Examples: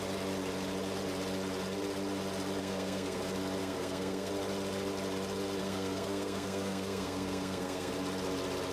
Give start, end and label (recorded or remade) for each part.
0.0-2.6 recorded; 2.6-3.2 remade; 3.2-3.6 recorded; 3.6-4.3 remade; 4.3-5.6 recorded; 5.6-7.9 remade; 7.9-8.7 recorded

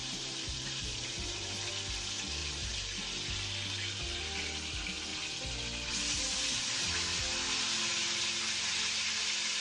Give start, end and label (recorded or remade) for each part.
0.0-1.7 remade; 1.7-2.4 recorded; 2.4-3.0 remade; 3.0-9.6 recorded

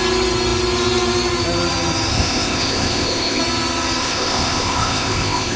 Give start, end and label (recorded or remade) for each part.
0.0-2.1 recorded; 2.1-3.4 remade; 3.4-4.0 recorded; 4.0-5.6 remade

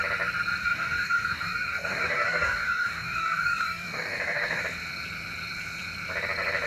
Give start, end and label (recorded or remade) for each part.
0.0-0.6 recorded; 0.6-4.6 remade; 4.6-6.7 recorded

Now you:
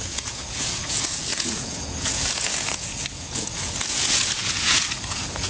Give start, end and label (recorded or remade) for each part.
0.0-5.5 remade